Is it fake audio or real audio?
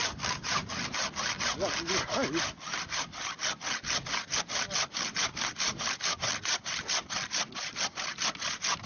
real